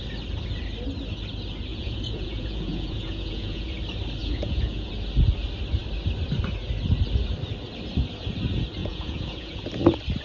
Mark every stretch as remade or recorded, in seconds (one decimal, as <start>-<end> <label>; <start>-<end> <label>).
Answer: 0.0-1.7 recorded; 1.7-3.7 remade; 3.7-4.2 recorded; 4.2-4.9 remade; 4.9-8.8 recorded; 8.8-9.6 remade; 9.6-10.2 recorded